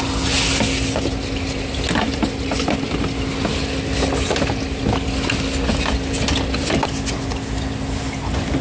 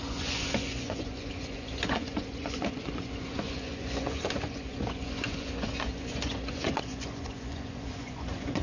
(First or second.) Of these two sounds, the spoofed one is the second